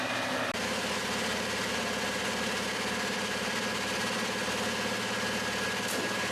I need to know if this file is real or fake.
real